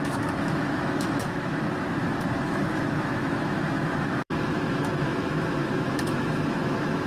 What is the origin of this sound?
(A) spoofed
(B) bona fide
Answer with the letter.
A